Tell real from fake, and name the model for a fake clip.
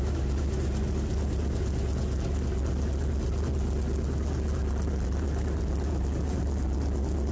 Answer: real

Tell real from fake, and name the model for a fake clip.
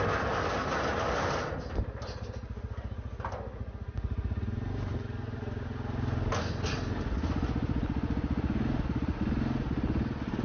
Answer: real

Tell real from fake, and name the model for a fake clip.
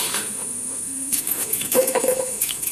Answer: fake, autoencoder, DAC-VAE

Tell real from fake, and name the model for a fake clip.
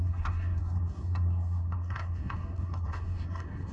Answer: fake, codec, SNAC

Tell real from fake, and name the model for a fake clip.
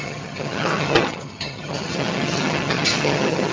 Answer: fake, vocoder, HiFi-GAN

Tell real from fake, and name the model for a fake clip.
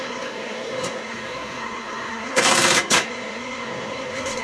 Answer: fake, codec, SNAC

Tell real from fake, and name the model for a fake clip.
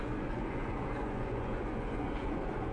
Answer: fake, vocoder, Vocos